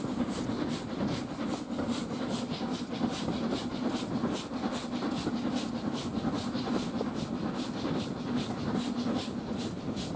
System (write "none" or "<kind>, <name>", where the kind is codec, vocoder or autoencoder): none